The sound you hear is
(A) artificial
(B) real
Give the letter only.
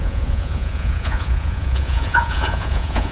A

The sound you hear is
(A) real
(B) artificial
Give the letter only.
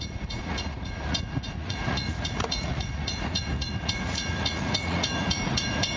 B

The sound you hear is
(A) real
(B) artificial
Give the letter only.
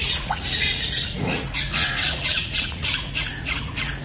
B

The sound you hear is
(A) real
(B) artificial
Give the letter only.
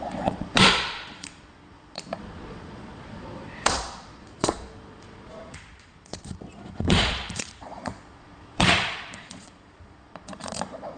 B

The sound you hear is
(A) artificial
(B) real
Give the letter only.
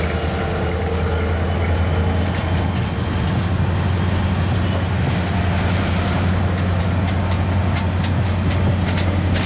B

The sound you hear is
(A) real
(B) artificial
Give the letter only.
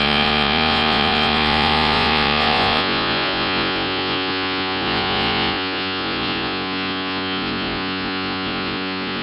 B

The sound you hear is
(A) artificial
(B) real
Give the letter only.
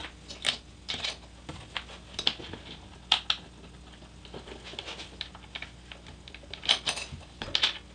B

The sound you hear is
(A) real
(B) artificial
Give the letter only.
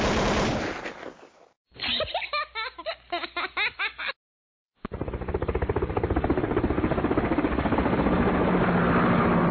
A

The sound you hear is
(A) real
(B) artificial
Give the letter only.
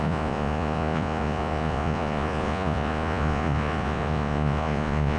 B